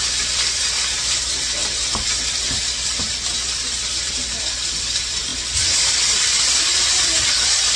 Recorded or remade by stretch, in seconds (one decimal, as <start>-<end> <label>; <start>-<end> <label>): 0.0-1.6 remade; 1.6-2.2 recorded; 2.2-5.3 remade; 5.3-5.8 recorded; 5.8-7.8 remade